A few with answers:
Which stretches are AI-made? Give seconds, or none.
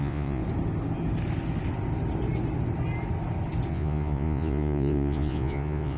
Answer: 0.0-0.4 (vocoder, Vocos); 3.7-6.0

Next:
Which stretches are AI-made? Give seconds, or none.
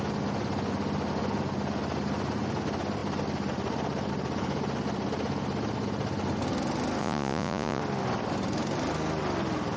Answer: 7.0-7.8 (vocoder, Vocos)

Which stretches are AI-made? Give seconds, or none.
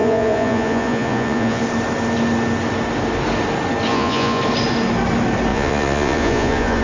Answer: 0.0-1.6 (vocoder, Vocos); 3.9-4.4; 5.5-6.8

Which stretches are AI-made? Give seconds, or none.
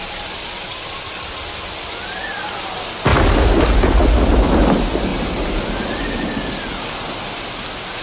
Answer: none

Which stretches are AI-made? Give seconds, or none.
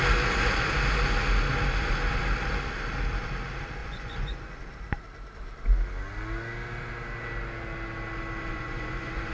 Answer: 3.8-4.6 (vocoder, Vocos); 8.5-9.3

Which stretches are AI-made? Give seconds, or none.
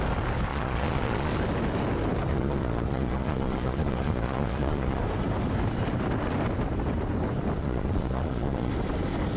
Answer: 0.5-1.3 (vocoder, Vocos); 2.3-5.0; 7.6-8.7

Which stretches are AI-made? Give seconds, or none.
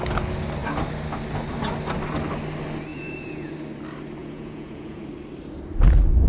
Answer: 2.9-3.5 (vocoder, Vocos); 4.2-5.0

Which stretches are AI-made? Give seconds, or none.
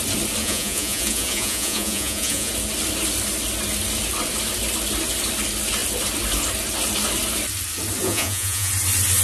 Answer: 0.4-2.5 (vocoder, Vocos); 8.0-8.7